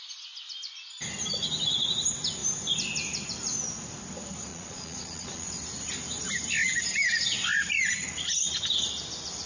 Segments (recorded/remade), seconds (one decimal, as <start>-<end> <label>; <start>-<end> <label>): 0.0-4.5 recorded; 4.5-5.5 remade; 5.5-9.5 recorded